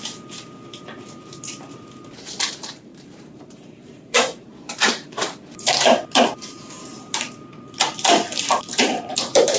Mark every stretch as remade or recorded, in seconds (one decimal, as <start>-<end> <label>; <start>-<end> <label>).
0.0-9.6 remade

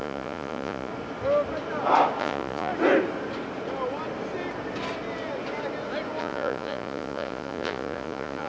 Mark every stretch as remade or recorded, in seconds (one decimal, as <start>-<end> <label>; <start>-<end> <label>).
0.0-0.9 remade; 0.9-2.2 recorded; 2.2-2.7 remade; 2.7-6.2 recorded; 6.2-8.5 remade

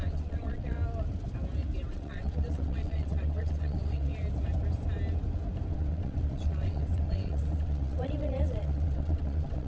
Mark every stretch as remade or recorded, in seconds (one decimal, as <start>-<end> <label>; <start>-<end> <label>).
0.0-0.8 remade; 0.8-1.9 recorded; 1.9-4.1 remade; 4.1-5.7 recorded; 5.7-9.7 remade

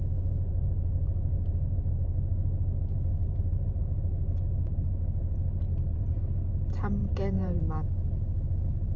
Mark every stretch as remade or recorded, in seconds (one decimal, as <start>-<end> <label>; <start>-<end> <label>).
0.0-3.2 recorded; 3.2-3.8 remade; 3.8-5.7 recorded; 5.7-6.2 remade; 6.2-7.0 recorded; 7.0-7.7 remade; 7.7-9.0 recorded